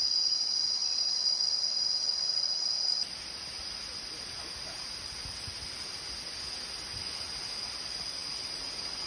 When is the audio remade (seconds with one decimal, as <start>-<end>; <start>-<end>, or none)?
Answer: none